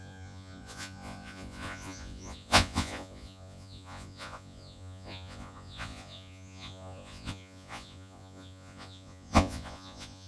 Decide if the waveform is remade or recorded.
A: remade